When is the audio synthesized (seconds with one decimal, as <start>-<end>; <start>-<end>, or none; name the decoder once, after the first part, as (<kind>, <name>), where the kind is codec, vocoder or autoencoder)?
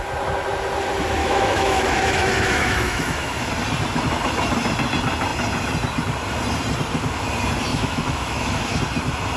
1.2-3.5 (autoencoder, DAC-VAE); 7.7-8.8